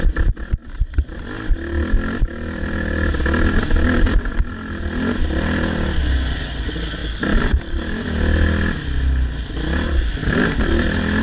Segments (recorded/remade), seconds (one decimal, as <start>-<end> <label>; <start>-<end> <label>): 0.0-11.2 recorded